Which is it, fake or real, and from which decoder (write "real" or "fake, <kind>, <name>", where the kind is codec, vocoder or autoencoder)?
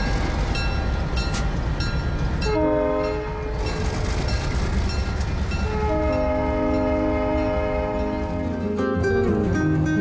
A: real